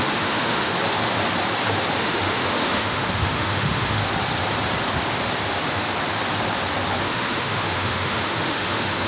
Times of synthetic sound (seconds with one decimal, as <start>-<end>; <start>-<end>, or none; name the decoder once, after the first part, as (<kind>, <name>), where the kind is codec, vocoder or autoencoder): 0.0-0.7 (autoencoder, DAC-VAE); 2.0-4.0; 7.0-9.1